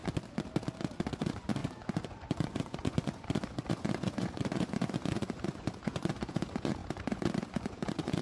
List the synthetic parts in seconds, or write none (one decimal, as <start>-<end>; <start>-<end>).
0.8-8.2